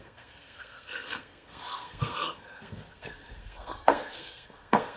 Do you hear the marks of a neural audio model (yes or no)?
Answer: yes